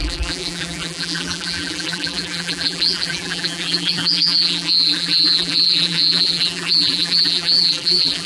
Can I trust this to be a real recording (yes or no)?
no